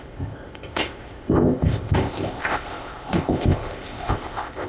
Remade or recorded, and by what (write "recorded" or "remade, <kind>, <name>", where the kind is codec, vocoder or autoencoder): remade, codec, ZipCodec